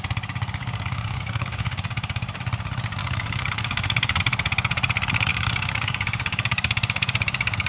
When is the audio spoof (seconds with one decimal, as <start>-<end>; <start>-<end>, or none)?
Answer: 0.6-2.4; 3.0-4.2; 5.3-7.7